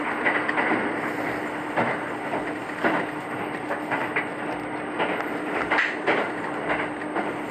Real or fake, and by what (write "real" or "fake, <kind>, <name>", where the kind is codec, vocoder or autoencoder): real